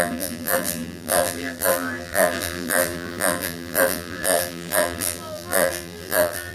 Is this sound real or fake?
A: fake